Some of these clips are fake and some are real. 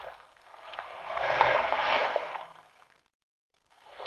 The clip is fake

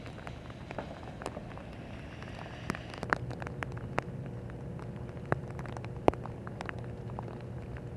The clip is real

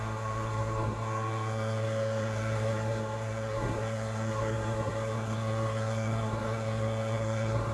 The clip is fake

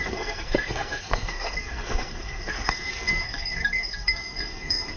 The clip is fake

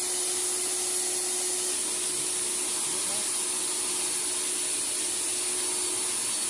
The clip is real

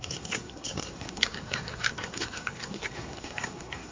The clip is fake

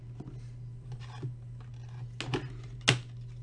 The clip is real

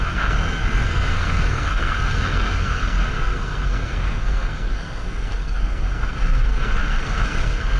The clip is fake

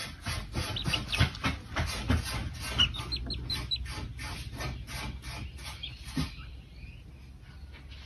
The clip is real